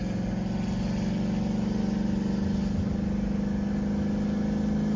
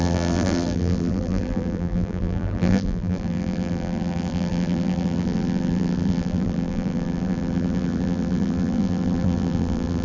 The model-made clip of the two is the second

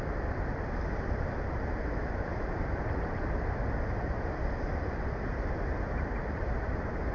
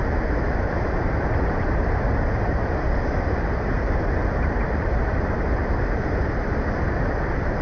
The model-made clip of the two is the second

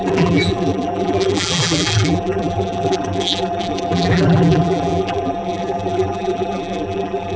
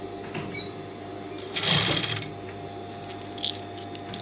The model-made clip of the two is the first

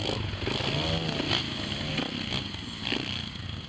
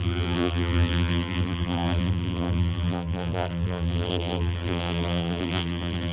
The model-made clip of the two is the second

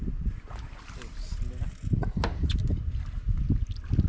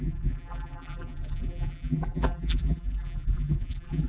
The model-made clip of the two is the second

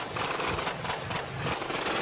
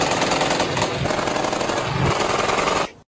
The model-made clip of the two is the first